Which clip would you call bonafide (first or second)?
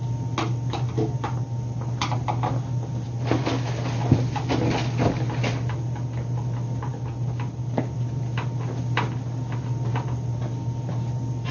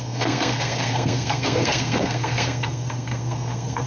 first